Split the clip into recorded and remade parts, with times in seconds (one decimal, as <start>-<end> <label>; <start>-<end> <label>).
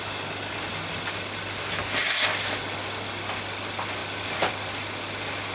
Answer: 0.0-5.5 recorded